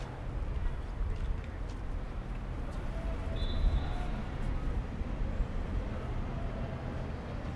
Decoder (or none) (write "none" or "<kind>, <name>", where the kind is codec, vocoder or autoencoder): none